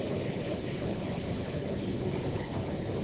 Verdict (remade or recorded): remade